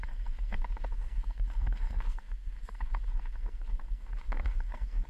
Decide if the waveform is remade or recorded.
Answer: remade